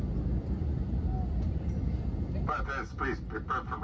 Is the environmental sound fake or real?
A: real